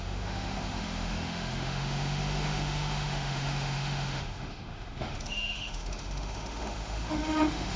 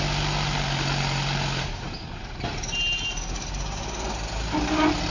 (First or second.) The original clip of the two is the second